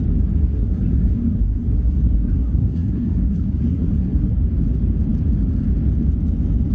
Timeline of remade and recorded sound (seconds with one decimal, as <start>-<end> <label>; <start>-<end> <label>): 0.0-0.4 recorded; 0.4-4.4 remade; 4.4-6.7 recorded